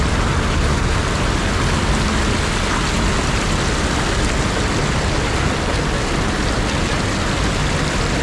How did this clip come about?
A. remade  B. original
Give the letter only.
B